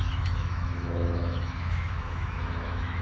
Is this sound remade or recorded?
remade